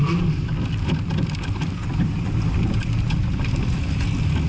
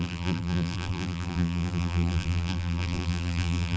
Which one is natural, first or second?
first